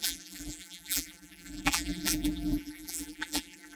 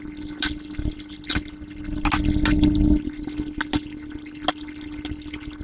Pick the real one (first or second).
second